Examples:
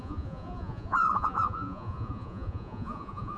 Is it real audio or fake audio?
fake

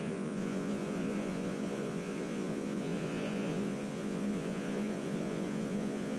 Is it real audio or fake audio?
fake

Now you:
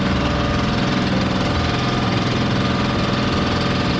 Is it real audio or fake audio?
real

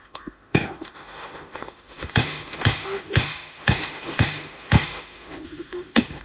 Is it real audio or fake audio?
fake